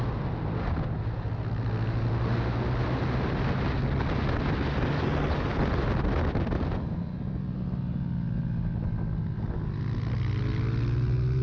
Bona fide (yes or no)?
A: yes